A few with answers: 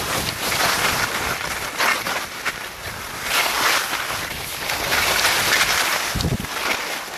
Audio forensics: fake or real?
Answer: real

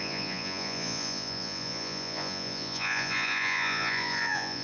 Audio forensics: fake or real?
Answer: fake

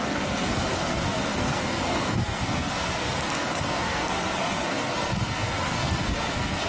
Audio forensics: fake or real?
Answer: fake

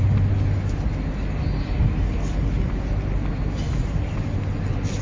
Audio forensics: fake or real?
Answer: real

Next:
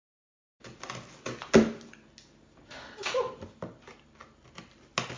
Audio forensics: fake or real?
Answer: real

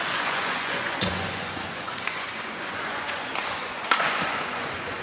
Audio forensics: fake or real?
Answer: fake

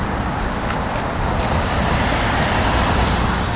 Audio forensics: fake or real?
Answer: real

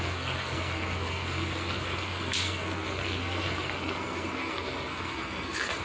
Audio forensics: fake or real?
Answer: fake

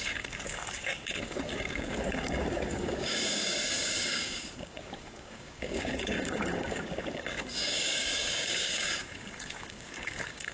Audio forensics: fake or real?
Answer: fake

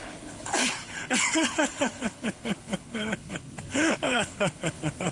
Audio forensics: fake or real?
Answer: fake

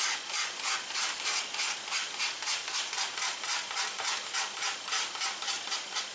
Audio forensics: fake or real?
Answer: real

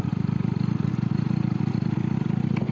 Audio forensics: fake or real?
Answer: real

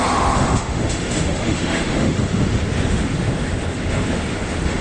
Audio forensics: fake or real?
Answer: fake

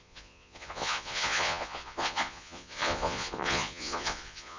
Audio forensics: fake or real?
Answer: fake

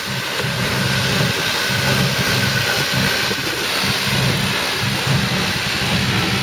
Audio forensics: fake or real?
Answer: real